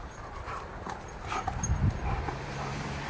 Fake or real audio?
fake